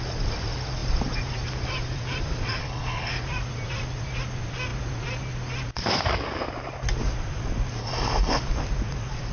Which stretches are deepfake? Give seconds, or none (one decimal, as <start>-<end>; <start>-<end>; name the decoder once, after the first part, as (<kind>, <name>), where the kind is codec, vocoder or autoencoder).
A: 2.6-3.1 (codec, HILCodec); 7.8-8.4